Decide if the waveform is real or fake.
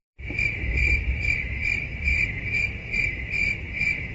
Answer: fake